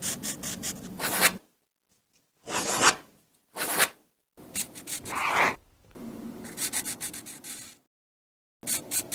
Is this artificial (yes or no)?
no